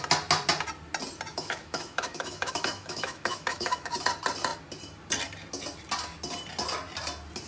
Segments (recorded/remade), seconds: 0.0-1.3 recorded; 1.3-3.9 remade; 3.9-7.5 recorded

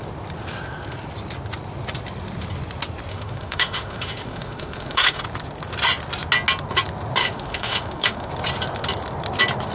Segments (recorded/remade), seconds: 0.0-3.1 recorded; 3.1-5.2 remade; 5.2-7.2 recorded; 7.2-8.3 remade; 8.3-9.7 recorded